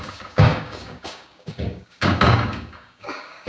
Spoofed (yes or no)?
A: yes